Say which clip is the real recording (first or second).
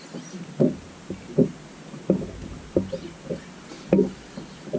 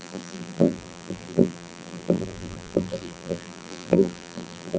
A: first